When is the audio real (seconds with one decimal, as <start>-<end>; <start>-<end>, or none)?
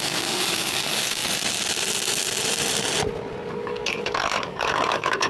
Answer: 1.2-3.5